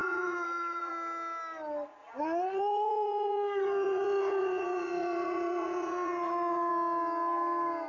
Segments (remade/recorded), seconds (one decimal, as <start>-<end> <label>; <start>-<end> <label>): 0.0-0.9 remade; 0.9-2.0 recorded; 2.0-6.7 remade; 6.7-7.9 recorded